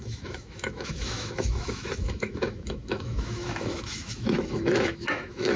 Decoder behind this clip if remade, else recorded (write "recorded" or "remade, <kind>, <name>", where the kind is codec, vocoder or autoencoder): remade, autoencoder, DAC-VAE